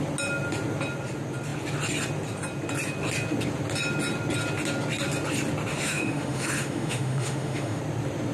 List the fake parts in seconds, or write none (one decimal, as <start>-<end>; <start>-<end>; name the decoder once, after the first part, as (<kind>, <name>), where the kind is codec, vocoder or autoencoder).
5.7-7.8 (autoencoder, DAC-VAE)